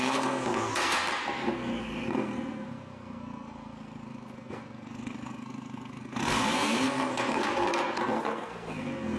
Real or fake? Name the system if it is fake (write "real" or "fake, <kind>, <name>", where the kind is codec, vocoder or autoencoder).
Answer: fake, codec, SNAC